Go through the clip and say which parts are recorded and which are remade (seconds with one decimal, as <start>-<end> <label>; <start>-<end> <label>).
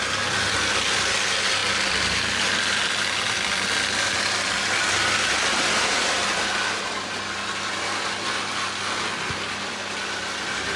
0.0-10.8 recorded